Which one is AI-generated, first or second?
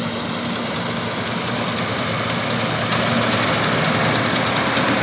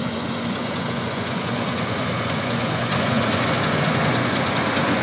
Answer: second